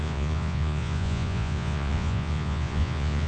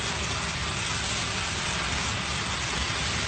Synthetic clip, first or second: first